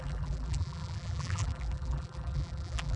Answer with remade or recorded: remade